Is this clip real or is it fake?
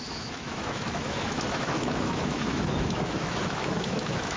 fake